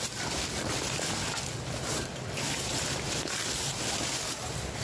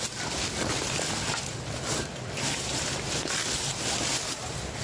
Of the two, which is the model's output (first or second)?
first